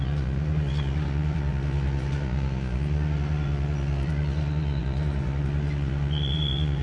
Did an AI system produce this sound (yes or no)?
yes